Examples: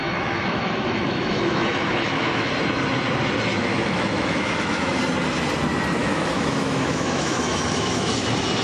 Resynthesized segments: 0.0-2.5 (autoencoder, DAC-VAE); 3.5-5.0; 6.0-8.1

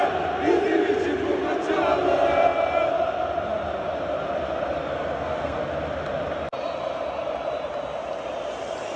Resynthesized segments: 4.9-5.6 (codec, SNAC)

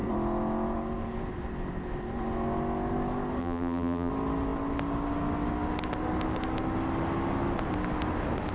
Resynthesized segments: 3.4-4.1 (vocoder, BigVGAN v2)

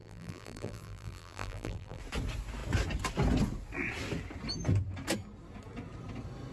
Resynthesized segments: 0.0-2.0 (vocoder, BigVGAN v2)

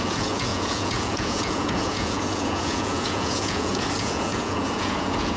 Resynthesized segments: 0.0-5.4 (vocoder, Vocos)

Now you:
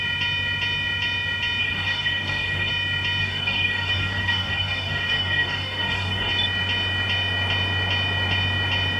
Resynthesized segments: 1.6-2.7 (codec, DAC); 3.2-6.3